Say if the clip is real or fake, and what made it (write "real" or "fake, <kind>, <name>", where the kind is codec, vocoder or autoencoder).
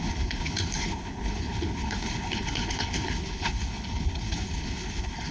fake, codec, HILCodec